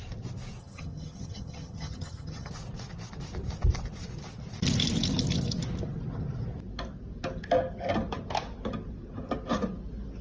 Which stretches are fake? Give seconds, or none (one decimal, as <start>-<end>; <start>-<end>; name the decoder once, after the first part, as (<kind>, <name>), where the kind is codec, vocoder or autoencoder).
0.6-2.5 (vocoder, HiFi-GAN)